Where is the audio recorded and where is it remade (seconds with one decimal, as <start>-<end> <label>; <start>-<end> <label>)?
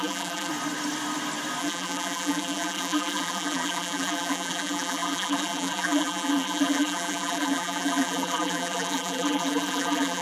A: 0.0-0.5 remade; 0.5-1.6 recorded; 1.6-10.2 remade